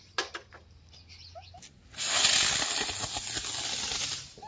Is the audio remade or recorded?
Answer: recorded